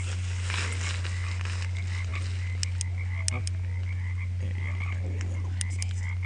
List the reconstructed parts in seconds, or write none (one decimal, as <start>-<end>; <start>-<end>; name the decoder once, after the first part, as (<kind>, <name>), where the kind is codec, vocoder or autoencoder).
none